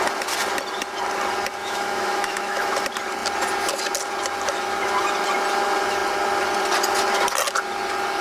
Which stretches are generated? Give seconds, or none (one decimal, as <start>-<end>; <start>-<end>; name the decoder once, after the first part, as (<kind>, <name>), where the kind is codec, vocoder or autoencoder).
1.6-2.7 (autoencoder, DAC-VAE)